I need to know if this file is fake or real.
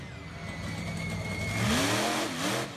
real